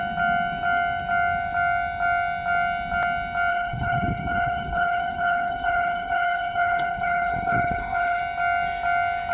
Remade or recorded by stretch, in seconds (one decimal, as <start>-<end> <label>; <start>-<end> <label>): 0.0-3.5 recorded; 3.5-8.2 remade; 8.2-9.3 recorded